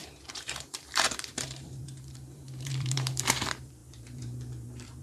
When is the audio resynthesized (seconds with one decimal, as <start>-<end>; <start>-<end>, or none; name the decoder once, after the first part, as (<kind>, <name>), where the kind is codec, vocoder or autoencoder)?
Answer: 0.0-5.0 (vocoder, BigVGAN v2)